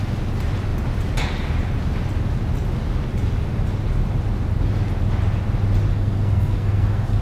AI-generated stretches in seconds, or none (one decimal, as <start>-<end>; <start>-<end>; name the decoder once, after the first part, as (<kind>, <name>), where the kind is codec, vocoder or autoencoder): 5.9-7.2 (codec, SNAC)

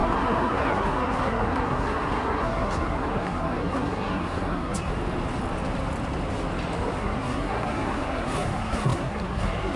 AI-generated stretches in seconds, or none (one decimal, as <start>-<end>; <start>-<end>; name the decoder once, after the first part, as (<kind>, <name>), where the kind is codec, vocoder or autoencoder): 0.0-4.9 (codec, SNAC); 7.0-9.8

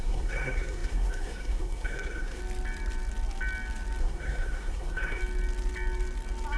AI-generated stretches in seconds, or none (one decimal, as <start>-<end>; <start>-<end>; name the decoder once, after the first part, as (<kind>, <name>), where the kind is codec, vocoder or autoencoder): 0.0-2.4 (codec, SNAC); 4.0-5.2

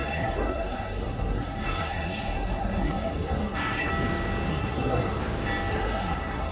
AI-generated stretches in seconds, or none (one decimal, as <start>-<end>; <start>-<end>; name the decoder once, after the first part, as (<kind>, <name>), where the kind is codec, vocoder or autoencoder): 0.0-3.9 (codec, SNAC); 4.5-5.2; 5.7-6.5

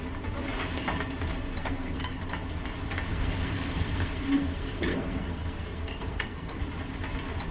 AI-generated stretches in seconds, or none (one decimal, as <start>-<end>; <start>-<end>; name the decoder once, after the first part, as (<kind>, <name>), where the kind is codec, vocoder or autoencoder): 1.6-2.2 (codec, SNAC); 3.1-6.6

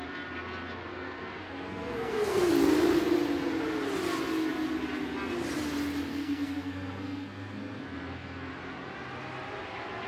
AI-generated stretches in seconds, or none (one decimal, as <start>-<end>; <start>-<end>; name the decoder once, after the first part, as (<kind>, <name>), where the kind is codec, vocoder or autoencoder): 0.9-2.5 (codec, SNAC); 6.1-8.5